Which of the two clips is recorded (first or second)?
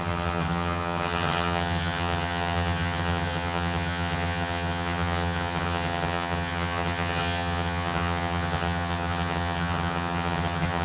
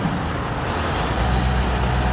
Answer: second